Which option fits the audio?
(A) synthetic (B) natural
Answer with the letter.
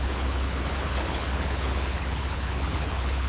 A